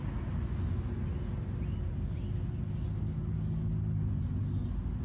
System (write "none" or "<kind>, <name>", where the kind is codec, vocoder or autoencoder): none